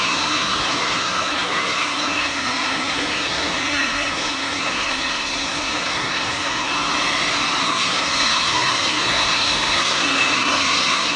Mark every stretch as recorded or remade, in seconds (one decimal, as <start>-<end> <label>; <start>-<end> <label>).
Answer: 0.0-6.7 remade; 6.7-7.6 recorded; 7.6-11.2 remade